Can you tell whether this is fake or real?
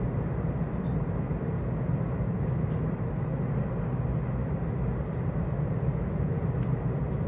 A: real